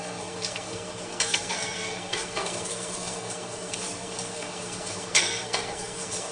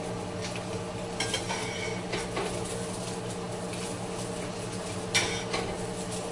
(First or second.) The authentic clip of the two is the second